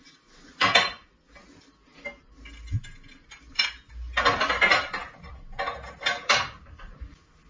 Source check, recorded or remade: recorded